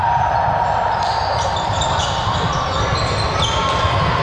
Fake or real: real